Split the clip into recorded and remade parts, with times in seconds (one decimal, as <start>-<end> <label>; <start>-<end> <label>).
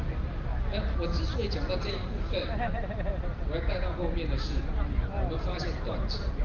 0.0-0.5 remade; 0.5-1.9 recorded; 1.9-4.0 remade; 4.0-4.7 recorded; 4.7-6.4 remade